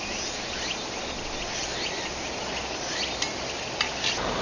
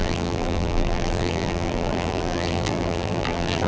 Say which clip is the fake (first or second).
second